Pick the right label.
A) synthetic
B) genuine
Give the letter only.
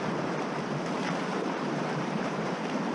A